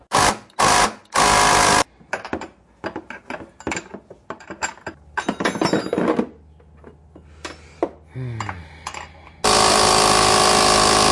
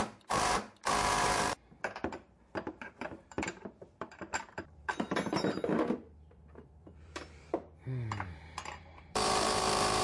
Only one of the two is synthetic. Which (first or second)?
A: second